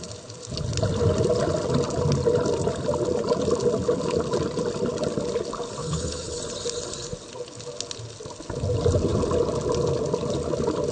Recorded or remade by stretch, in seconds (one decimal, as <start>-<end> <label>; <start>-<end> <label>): 0.0-5.8 recorded; 5.8-6.4 remade; 6.4-10.9 recorded